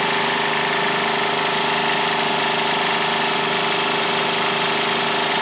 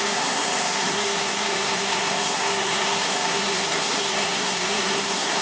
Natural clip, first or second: first